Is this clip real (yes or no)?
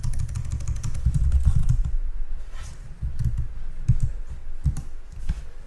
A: yes